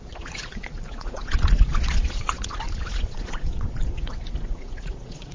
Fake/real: fake